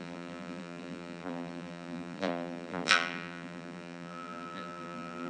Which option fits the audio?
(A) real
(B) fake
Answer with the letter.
B